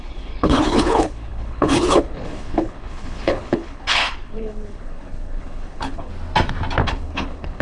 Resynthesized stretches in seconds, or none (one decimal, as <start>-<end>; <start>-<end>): 0.0-6.1; 6.8-7.6